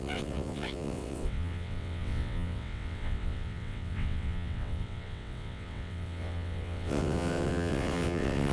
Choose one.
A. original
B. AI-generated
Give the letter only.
B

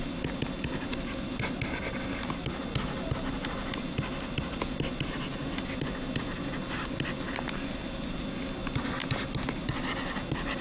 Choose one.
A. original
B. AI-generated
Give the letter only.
A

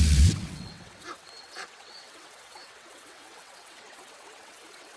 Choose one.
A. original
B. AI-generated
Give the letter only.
B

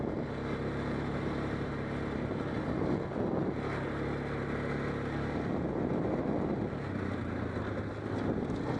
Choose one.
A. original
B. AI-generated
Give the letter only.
A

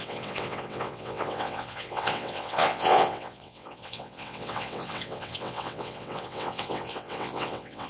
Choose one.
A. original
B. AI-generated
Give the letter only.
B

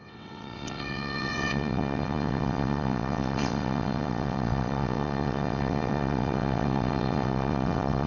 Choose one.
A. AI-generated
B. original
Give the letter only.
A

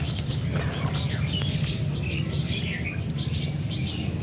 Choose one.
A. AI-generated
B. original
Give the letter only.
B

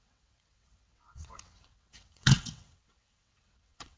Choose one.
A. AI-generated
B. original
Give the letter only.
A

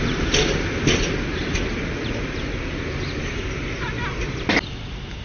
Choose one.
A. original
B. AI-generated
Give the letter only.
A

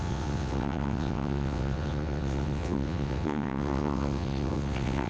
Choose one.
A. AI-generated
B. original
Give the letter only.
A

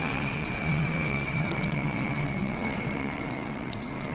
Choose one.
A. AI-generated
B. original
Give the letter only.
A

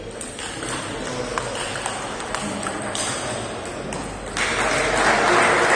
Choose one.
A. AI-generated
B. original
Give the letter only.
B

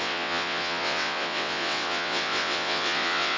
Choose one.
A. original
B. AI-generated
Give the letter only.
B